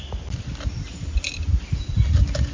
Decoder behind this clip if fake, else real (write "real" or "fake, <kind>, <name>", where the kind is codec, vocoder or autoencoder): real